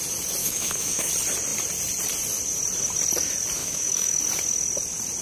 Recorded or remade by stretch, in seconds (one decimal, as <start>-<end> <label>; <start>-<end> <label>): 0.0-0.4 recorded; 0.4-1.1 remade; 1.1-3.6 recorded; 3.6-4.2 remade; 4.2-5.2 recorded